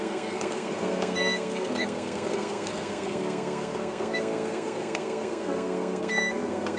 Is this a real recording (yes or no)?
no